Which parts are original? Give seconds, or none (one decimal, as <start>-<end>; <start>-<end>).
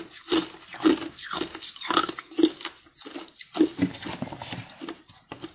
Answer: 0.0-5.5